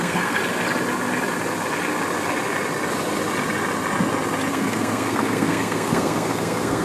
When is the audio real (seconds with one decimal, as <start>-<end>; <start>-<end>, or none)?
0.4-4.5